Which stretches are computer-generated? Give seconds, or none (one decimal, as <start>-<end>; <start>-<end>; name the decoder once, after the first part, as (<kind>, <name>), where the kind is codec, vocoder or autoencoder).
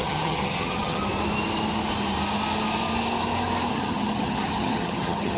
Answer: 0.0-1.0 (vocoder, HiFi-GAN); 3.7-5.4